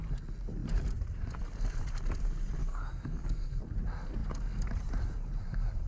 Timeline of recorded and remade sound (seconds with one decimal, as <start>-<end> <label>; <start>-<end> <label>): 0.0-2.6 recorded; 2.6-3.5 remade; 3.5-5.9 recorded